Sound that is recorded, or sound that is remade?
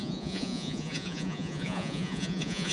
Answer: remade